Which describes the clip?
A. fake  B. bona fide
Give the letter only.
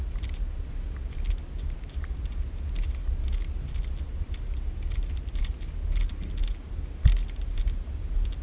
B